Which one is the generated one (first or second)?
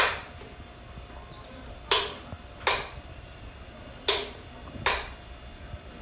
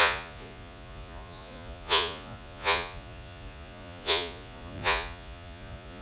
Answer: second